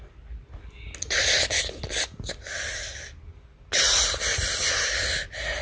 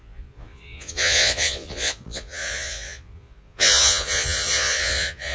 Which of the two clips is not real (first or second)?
second